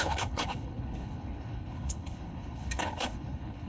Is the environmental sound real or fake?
fake